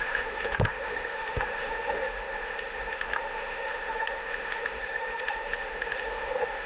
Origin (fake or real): fake